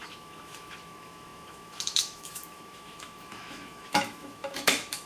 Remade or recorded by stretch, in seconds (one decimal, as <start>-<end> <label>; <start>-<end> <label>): 0.0-5.1 remade